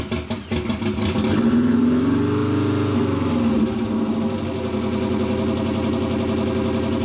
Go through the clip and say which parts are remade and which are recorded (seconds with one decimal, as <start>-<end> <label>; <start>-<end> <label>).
0.0-7.0 recorded

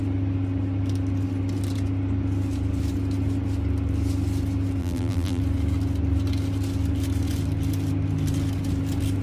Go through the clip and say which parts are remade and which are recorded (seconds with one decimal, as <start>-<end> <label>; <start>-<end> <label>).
0.0-4.8 recorded; 4.8-5.4 remade; 5.4-9.2 recorded

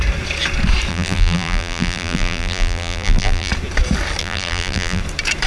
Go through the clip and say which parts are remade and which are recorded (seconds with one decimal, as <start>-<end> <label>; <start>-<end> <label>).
0.0-0.9 recorded; 0.9-3.5 remade; 3.5-4.2 recorded; 4.2-5.0 remade; 5.0-5.5 recorded

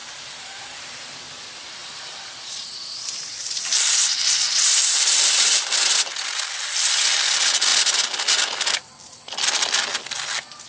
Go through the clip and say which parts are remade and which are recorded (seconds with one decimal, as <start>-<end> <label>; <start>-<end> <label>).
0.0-1.1 remade; 1.1-1.8 recorded; 1.8-6.1 remade; 6.1-10.7 recorded

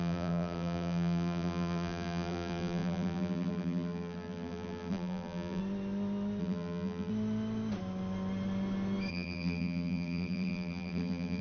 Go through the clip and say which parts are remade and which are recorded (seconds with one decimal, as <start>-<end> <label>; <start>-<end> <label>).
0.0-5.6 remade; 5.6-6.4 recorded; 6.4-7.1 remade; 7.1-9.1 recorded; 9.1-11.4 remade